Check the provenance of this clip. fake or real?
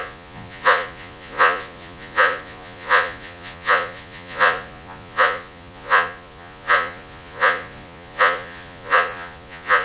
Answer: fake